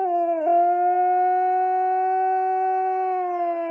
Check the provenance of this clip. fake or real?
real